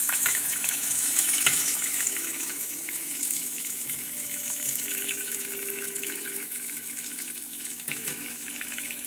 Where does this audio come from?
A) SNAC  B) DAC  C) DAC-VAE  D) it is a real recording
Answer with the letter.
C